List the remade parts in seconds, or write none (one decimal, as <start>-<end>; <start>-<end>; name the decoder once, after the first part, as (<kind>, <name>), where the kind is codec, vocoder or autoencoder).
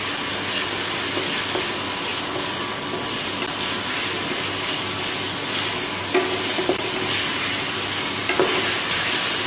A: 6.5-7.7 (vocoder, BigVGAN v2); 8.2-9.5